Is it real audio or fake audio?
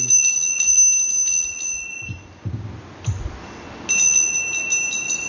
real